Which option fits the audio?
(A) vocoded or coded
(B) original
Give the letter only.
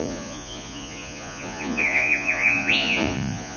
A